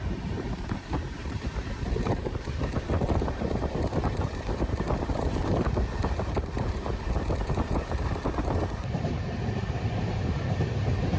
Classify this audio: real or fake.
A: fake